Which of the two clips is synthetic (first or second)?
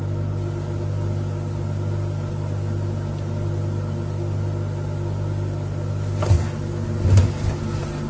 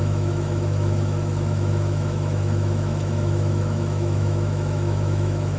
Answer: second